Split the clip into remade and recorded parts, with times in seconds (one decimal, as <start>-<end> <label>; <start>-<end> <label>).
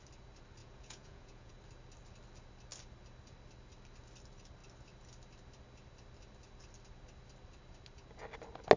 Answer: 0.0-0.6 recorded; 0.6-1.5 remade; 1.5-8.8 recorded